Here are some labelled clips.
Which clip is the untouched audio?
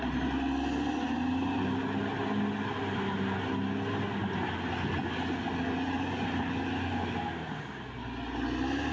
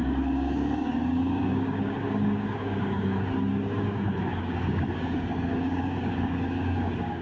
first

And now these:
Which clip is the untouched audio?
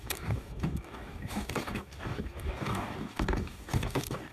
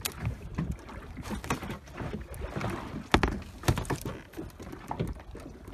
second